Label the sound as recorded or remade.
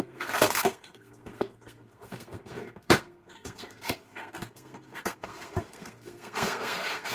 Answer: remade